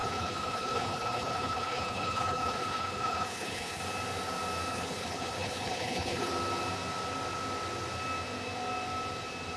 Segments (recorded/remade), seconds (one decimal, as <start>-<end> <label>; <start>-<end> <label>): 0.0-3.8 remade; 3.8-4.7 recorded; 4.7-6.3 remade; 6.3-9.6 recorded